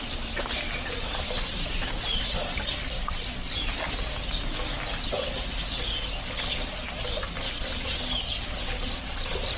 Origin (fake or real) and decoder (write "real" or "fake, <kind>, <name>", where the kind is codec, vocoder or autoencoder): real